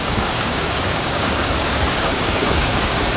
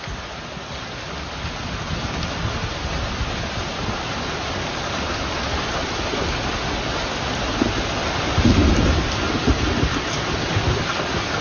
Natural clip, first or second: second